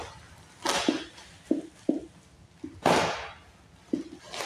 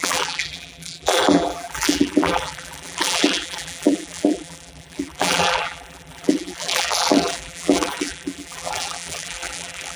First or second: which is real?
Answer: first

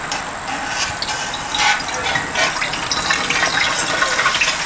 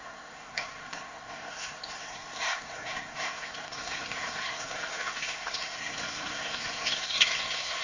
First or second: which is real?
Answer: first